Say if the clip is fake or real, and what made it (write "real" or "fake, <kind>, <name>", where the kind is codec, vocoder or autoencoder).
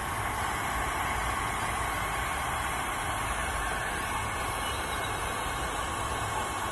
real